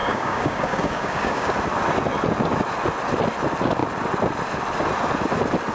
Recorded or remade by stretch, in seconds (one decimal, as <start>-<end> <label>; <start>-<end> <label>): 0.0-1.5 remade; 1.5-5.7 recorded